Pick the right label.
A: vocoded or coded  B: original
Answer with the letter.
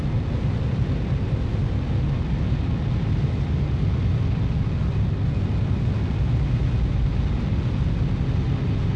B